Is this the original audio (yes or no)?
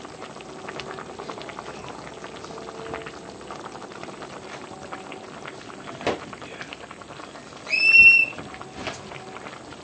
yes